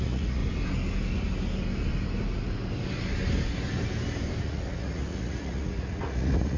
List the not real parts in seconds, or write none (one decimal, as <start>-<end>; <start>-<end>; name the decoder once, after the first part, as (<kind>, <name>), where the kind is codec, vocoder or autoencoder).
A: 0.0-0.4 (vocoder, Vocos); 4.4-6.6